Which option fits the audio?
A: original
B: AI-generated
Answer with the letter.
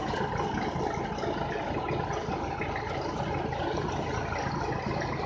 A